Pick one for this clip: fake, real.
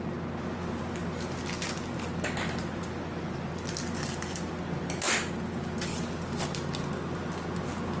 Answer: real